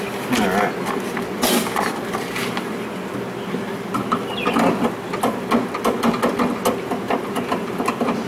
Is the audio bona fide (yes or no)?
yes